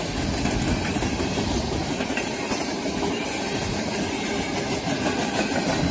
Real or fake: real